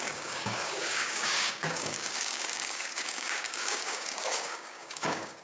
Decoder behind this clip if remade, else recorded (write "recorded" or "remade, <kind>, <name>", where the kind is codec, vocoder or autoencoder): remade, codec, DAC